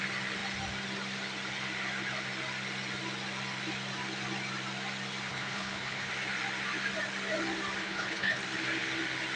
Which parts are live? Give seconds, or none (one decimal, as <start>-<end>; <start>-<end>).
0.0-5.3; 6.1-7.8; 8.4-9.4